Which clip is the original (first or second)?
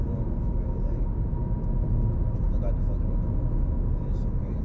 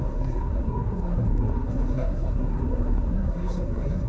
first